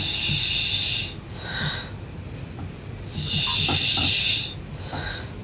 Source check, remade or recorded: recorded